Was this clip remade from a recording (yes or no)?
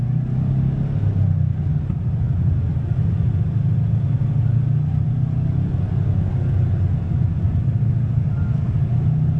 no